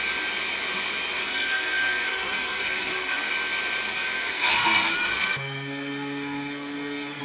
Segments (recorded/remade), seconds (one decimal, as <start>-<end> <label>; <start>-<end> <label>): 0.0-1.2 recorded; 1.2-3.3 remade; 3.3-3.9 recorded; 3.9-7.2 remade